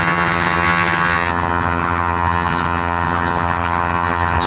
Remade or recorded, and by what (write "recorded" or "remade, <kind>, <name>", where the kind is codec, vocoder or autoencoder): remade, vocoder, HiFi-GAN